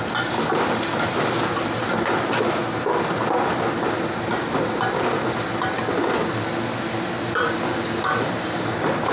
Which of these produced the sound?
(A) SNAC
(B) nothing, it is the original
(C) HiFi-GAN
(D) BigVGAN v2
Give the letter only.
B